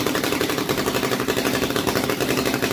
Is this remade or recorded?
recorded